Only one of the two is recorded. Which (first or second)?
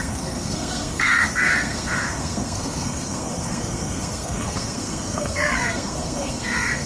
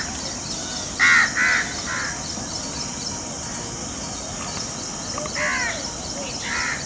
second